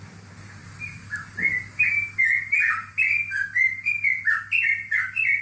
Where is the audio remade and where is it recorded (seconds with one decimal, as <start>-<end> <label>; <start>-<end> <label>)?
0.0-5.4 recorded